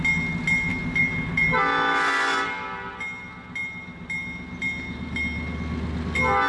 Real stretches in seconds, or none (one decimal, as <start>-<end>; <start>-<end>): 0.0-6.5